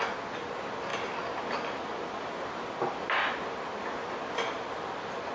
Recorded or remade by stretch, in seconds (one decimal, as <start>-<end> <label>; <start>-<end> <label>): 0.0-5.3 recorded